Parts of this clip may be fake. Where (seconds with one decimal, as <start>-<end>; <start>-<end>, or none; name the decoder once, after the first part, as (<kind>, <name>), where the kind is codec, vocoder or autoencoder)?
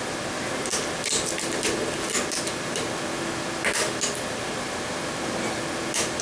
none